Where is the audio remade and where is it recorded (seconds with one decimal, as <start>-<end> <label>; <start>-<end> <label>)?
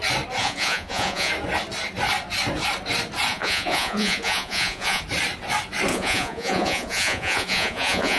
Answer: 0.0-0.4 recorded; 0.4-1.3 remade; 1.3-3.3 recorded; 3.3-5.0 remade; 5.0-5.9 recorded; 5.9-8.2 remade